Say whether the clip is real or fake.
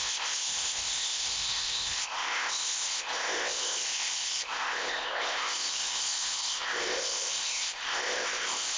fake